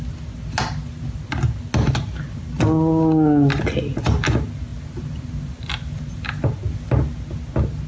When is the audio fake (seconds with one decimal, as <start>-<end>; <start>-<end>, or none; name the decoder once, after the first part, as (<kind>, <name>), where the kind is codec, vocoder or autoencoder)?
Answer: 4.7-5.7 (vocoder, BigVGAN v2)